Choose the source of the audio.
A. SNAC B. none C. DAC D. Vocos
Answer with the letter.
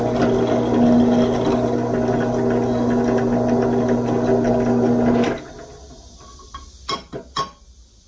B